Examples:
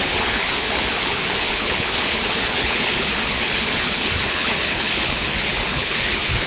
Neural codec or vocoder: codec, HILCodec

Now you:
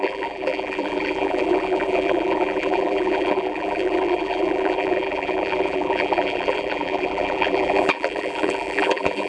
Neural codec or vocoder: vocoder, BigVGAN v2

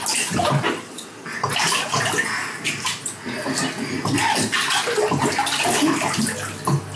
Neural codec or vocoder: none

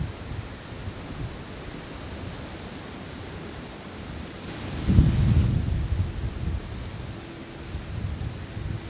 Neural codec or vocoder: none